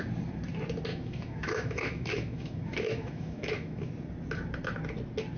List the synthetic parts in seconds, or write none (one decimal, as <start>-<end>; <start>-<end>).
0.9-3.9